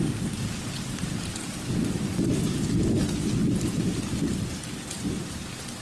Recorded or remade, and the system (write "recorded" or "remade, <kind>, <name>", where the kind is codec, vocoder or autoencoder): recorded